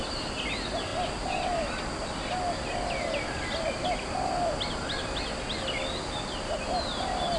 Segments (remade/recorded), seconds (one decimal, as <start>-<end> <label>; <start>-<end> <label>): 0.0-7.4 recorded